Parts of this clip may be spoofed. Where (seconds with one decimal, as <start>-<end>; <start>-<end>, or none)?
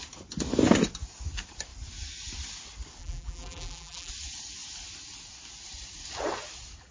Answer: 3.0-4.1